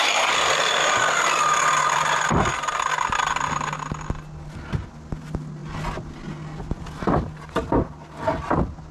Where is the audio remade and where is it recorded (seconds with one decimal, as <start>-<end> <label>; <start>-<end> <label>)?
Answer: 0.0-8.9 recorded